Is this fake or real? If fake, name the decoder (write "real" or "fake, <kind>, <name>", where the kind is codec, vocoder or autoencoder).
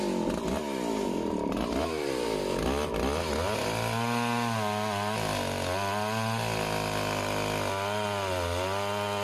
real